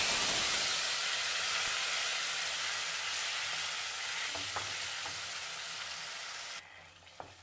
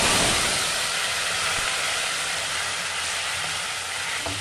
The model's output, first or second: second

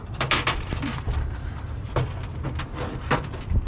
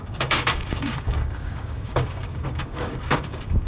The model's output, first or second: second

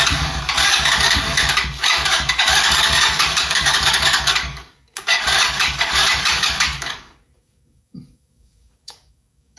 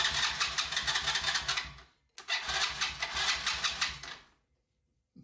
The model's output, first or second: first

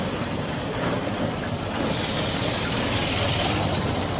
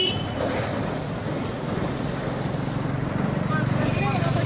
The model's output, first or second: first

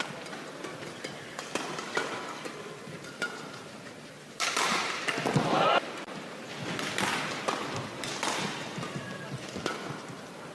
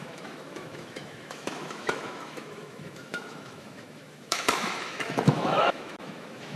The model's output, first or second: second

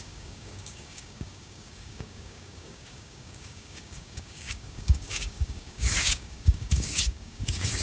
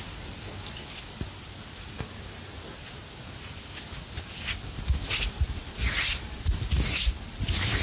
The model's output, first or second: first